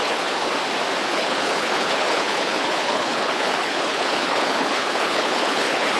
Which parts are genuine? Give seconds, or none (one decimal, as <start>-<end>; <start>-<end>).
0.5-1.1